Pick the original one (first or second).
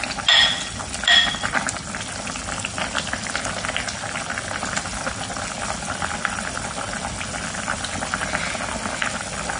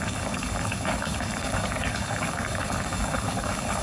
first